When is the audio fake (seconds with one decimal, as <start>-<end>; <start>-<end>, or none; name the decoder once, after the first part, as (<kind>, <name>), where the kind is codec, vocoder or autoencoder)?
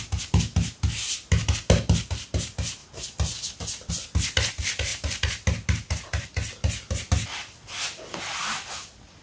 none